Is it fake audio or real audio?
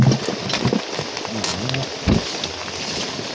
real